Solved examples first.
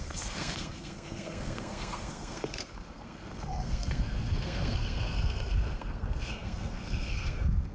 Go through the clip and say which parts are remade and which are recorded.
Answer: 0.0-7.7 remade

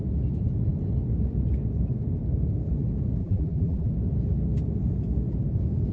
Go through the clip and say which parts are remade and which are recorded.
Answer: 0.0-3.2 recorded; 3.2-3.9 remade; 3.9-5.9 recorded

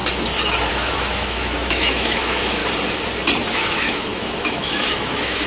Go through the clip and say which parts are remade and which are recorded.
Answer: 0.0-0.7 recorded; 0.7-2.6 remade; 2.6-3.5 recorded; 3.5-5.5 remade